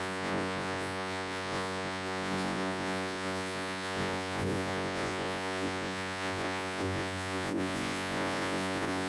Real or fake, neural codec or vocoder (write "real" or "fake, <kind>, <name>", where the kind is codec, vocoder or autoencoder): fake, vocoder, Vocos